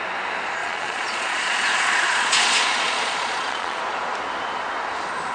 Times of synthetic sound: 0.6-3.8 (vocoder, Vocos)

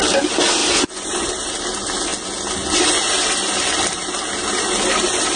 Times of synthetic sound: 0.6-1.3 (vocoder, Vocos)

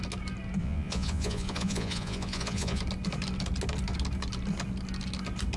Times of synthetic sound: 0.6-2.8 (vocoder, Vocos)

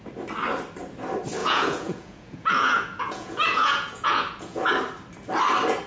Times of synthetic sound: 1.4-4.7 (vocoder, Vocos)

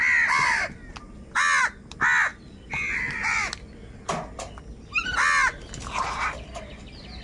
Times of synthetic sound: none